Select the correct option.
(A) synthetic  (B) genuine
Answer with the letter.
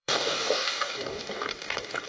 A